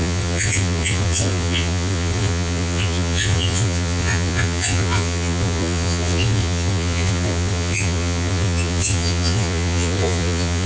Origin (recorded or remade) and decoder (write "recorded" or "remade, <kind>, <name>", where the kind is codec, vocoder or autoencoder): remade, vocoder, Vocos